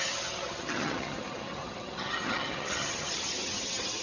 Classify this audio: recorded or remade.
remade